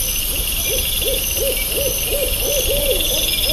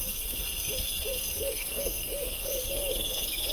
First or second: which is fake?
second